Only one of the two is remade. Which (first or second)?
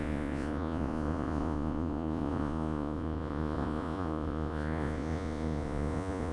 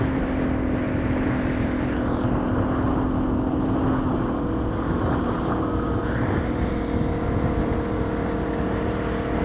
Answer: first